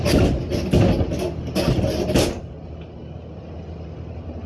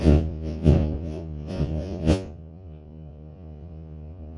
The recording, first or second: first